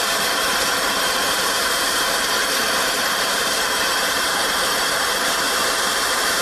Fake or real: fake